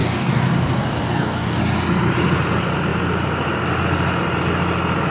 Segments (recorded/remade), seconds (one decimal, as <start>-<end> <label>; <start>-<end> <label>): 0.0-1.6 remade; 1.6-5.1 recorded